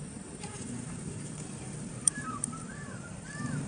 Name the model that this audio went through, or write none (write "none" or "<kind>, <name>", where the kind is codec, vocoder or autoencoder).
vocoder, BigVGAN v2